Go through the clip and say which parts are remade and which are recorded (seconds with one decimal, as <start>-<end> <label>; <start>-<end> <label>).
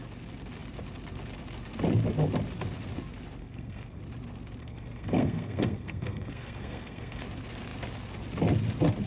0.0-3.4 recorded; 3.4-4.0 remade; 4.0-4.6 recorded; 4.6-7.2 remade; 7.2-9.1 recorded